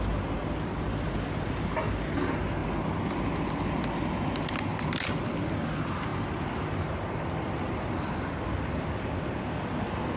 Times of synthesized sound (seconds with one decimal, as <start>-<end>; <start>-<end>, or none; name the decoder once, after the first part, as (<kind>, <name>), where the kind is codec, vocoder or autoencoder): none